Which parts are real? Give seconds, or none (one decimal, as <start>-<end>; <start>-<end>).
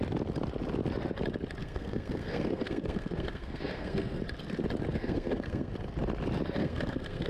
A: 0.0-1.6; 4.2-4.9; 5.7-6.6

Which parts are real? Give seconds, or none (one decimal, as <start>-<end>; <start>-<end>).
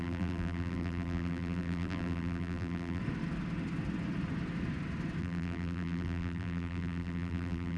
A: 3.0-5.2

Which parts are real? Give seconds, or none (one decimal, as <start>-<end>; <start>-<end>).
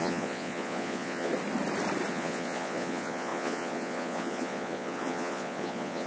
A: 1.3-2.1